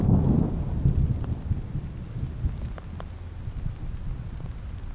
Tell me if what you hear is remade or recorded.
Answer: recorded